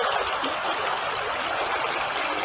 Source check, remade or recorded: recorded